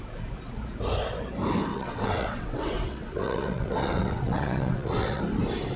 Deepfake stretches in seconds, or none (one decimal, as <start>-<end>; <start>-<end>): 1.7-5.2